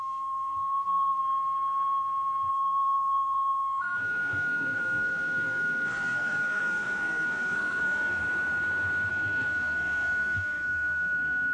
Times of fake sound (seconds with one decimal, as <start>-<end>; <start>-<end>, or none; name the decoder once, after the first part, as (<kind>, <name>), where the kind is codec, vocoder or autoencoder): 0.0-1.2 (codec, SNAC); 2.5-8.2; 9.1-11.5